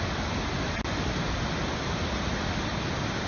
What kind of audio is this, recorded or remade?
recorded